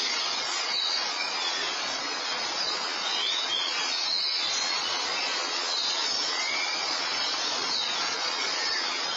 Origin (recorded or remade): remade